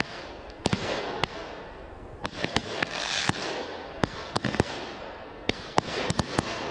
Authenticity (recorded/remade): remade